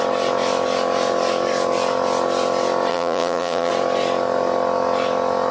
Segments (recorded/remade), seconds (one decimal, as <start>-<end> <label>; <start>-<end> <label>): 0.0-2.9 recorded; 2.9-3.7 remade; 3.7-5.5 recorded

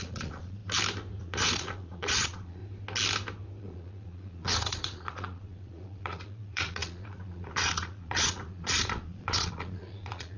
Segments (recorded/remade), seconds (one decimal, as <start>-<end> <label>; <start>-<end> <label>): 0.0-0.6 remade; 0.6-1.2 recorded; 1.2-2.6 remade; 2.6-3.6 recorded; 3.6-10.4 remade

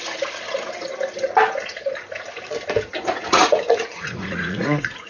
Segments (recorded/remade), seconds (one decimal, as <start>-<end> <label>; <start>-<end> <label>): 0.0-3.0 recorded; 3.0-5.1 remade

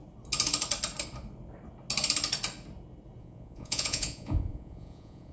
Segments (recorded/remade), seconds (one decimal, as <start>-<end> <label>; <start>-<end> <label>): 0.0-3.2 recorded; 3.2-5.3 remade

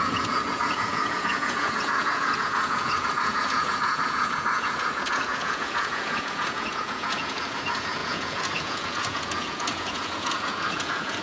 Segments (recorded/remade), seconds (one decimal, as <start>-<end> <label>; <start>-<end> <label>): 0.0-11.2 remade